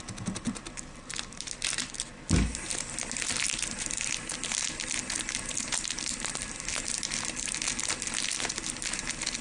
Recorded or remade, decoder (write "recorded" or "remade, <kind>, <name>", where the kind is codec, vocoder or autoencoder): recorded